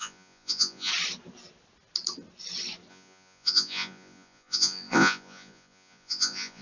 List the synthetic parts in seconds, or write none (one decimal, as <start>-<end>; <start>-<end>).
0.0-0.9; 2.9-6.6